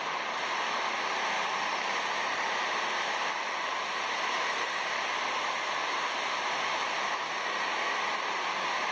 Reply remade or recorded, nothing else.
recorded